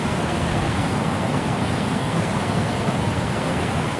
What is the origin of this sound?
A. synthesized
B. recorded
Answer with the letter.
A